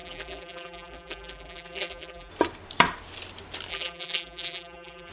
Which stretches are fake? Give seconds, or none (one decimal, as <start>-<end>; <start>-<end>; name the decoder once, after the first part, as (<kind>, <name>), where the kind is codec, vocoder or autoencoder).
0.0-2.3 (vocoder, BigVGAN v2); 3.7-5.1